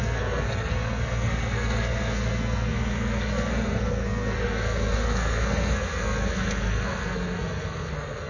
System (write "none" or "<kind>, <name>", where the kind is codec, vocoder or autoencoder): codec, SNAC